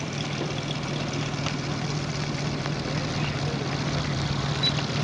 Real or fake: real